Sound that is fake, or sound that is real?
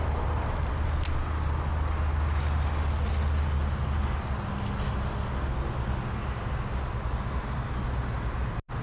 real